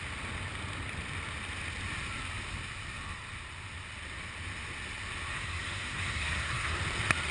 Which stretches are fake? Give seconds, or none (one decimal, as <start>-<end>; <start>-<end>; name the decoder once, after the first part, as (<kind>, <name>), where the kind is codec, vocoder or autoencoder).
5.3-6.8 (codec, SNAC)